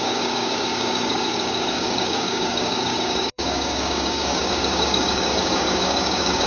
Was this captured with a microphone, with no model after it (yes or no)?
no